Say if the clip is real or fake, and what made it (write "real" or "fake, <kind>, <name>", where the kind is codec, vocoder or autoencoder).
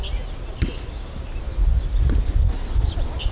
real